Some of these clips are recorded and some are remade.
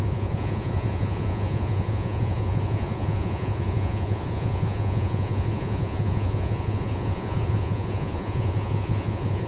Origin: remade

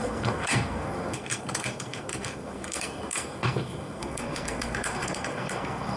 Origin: remade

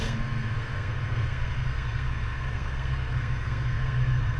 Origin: remade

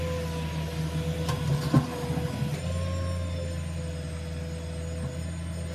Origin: recorded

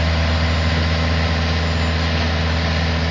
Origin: recorded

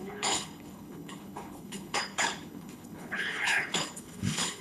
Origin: remade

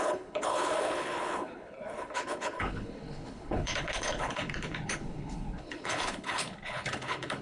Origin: remade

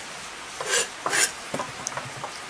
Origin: recorded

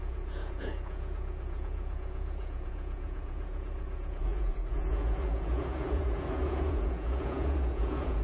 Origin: remade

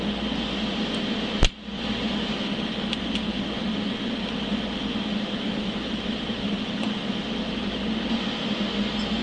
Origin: recorded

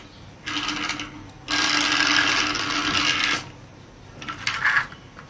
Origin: recorded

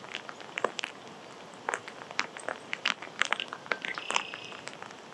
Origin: recorded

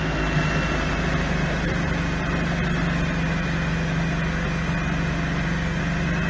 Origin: recorded